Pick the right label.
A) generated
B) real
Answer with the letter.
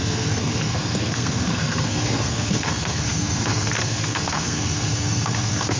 A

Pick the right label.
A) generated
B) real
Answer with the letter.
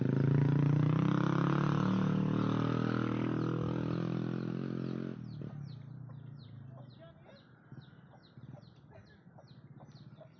B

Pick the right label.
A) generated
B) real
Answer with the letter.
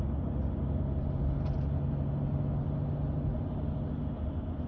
B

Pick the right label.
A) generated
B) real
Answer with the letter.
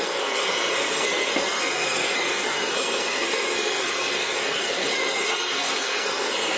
A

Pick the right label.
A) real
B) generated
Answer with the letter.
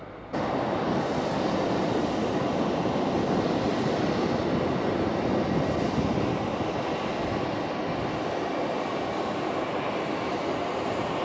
A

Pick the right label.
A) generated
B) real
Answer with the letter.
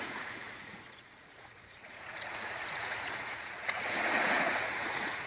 A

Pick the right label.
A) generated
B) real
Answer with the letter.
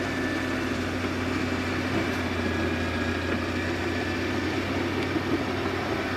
B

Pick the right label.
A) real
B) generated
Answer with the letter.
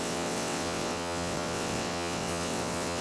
B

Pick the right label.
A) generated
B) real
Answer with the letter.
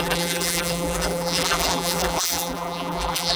A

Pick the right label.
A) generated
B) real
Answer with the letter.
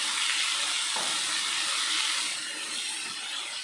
B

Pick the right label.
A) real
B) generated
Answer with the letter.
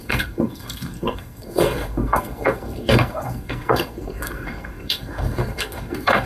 B